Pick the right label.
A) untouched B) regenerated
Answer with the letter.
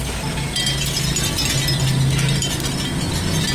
A